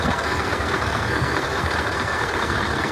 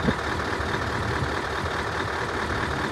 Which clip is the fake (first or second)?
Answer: first